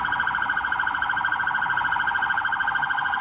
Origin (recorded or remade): recorded